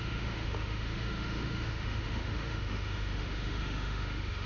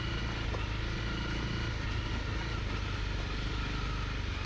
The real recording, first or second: second